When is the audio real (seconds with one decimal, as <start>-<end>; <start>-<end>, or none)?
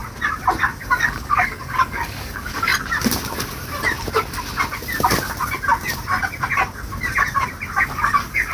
0.0-0.8; 2.7-7.8